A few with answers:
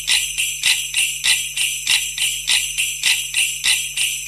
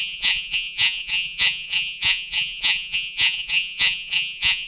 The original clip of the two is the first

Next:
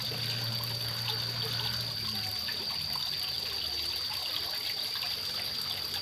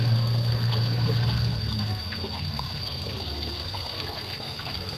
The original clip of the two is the first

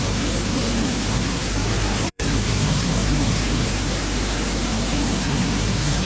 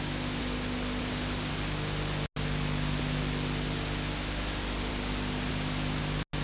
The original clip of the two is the second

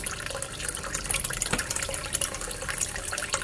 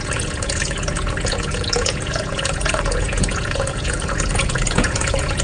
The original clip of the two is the first